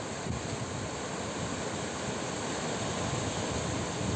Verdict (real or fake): real